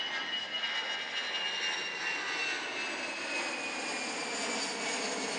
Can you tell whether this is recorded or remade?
recorded